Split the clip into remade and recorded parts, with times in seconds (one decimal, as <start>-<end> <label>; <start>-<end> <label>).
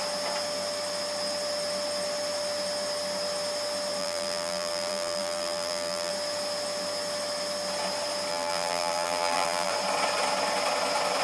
0.0-4.0 recorded; 4.0-6.1 remade; 6.1-8.3 recorded; 8.3-9.7 remade; 9.7-11.2 recorded